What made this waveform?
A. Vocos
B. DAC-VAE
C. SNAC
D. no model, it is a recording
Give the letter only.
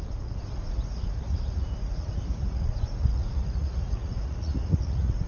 A